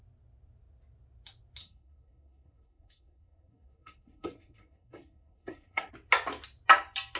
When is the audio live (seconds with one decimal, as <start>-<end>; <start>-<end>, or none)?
0.0-1.6; 5.9-7.2